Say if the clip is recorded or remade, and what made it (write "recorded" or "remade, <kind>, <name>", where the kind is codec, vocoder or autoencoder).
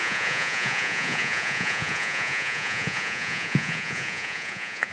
remade, vocoder, Vocos